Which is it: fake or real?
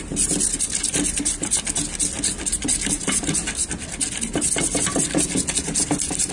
real